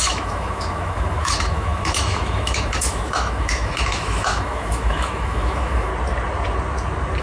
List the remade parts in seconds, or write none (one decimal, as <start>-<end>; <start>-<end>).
0.0-5.9